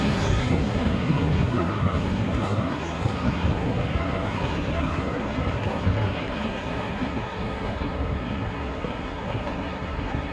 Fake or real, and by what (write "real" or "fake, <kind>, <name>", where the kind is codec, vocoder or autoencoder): fake, codec, SNAC